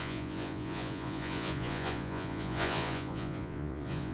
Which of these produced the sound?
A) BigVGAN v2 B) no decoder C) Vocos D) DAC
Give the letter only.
C